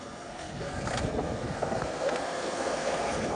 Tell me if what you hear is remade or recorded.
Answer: remade